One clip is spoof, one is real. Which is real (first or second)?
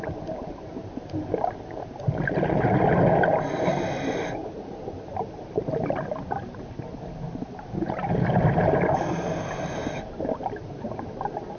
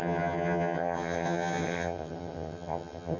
first